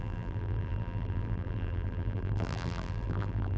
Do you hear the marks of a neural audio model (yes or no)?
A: yes